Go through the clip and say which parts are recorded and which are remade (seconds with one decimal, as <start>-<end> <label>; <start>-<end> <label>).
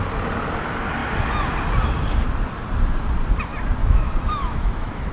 0.0-3.8 recorded; 3.8-5.1 remade